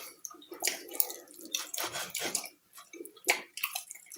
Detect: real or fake real